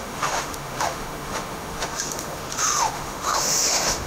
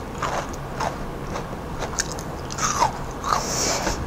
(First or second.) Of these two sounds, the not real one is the first